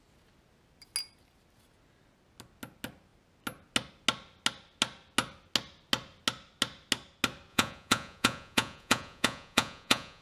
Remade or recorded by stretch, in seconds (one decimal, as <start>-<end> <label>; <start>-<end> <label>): 0.0-7.5 recorded; 7.5-10.2 remade